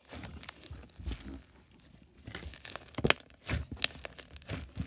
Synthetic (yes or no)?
no